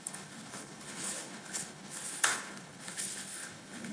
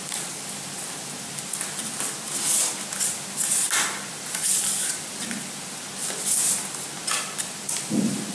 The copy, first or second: first